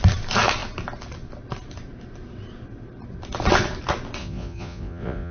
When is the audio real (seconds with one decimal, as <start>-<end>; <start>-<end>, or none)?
0.0-4.2